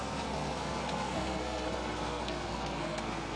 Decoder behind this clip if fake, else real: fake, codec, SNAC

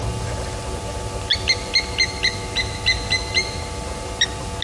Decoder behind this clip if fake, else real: real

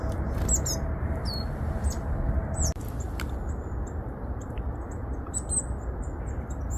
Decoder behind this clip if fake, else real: real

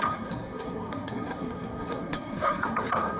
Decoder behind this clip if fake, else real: fake, codec, SNAC